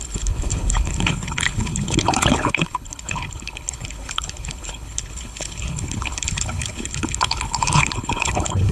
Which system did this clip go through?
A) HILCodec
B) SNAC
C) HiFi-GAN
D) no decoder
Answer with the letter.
A